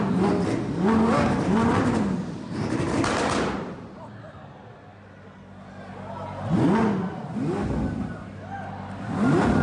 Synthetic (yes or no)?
no